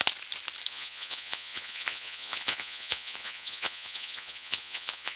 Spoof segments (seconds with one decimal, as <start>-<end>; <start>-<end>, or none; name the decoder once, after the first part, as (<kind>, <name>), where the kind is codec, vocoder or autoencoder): 0.7-5.2 (vocoder, Vocos)